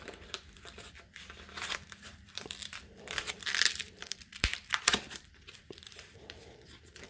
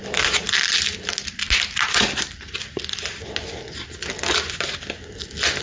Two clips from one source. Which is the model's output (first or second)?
first